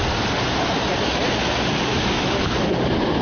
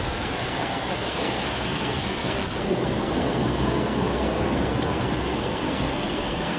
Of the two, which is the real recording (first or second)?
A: first